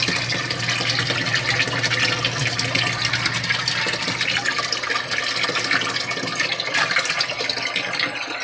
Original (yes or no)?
yes